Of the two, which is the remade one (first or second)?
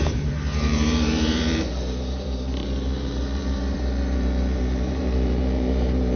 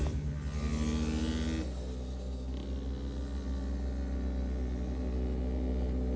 first